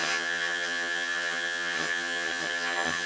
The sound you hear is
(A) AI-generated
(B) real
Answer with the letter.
A